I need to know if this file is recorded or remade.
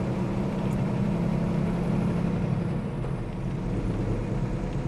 recorded